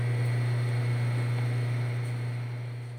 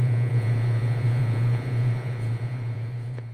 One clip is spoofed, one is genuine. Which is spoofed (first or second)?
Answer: second